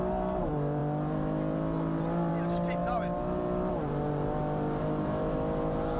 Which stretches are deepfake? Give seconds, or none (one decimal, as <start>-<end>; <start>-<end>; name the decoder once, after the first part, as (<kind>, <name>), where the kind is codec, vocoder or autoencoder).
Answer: none